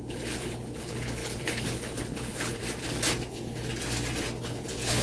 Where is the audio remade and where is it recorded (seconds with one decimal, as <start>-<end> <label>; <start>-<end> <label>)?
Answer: 0.0-2.6 remade; 2.6-3.3 recorded; 3.3-3.7 remade; 3.7-4.4 recorded; 4.4-5.0 remade